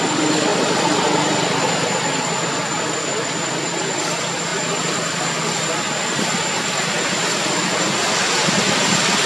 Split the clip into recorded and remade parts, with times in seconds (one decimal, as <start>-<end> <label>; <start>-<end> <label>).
0.0-9.3 recorded